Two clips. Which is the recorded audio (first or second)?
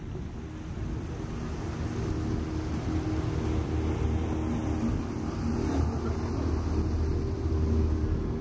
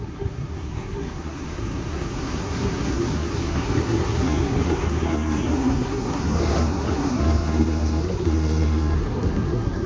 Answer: first